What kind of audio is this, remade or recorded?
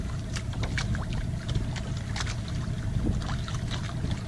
recorded